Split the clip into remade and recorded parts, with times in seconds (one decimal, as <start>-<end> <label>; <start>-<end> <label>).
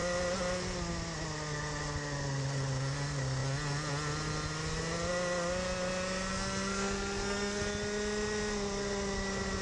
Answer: 0.0-6.3 recorded; 6.3-7.6 remade; 7.6-9.6 recorded